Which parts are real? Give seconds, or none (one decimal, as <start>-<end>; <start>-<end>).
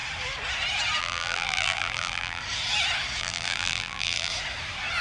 0.0-1.0; 2.4-3.2; 4.3-5.0